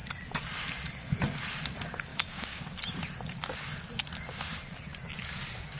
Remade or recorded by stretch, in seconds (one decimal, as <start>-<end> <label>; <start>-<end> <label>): 0.0-2.1 recorded; 2.1-2.6 remade; 2.6-5.8 recorded